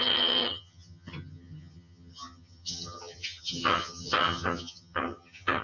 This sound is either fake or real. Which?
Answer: fake